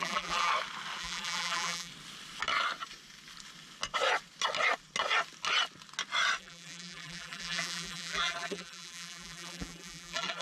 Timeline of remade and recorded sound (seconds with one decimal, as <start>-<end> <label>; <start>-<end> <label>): 0.0-0.5 remade; 0.5-1.0 recorded; 1.0-1.9 remade; 1.9-6.4 recorded; 6.4-10.4 remade

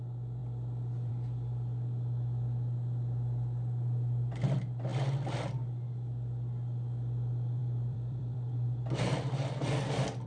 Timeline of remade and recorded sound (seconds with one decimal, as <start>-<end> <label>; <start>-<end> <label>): 0.0-7.6 recorded; 7.6-8.5 remade; 8.5-10.3 recorded

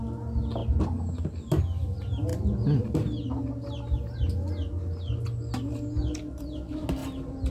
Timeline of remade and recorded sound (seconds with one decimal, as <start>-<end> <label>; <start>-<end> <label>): 0.0-7.5 recorded

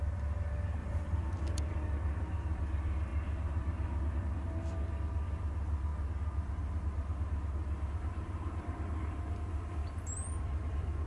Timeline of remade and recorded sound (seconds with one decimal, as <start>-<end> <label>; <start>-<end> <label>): 0.0-0.8 recorded; 0.8-1.3 remade; 1.3-11.1 recorded

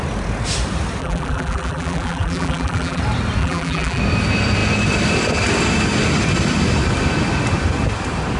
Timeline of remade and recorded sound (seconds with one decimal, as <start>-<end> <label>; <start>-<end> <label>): 0.0-1.0 recorded; 1.0-3.0 remade; 3.0-3.4 recorded; 3.4-4.0 remade; 4.0-8.4 recorded